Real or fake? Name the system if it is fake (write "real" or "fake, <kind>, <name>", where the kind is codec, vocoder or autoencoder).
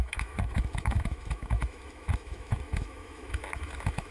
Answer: fake, autoencoder, DAC-VAE